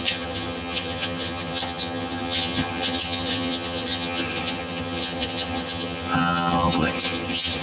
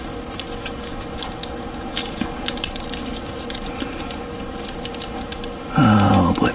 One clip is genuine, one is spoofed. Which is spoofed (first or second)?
first